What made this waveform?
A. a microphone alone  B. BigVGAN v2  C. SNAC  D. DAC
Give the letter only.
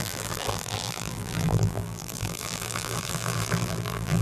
B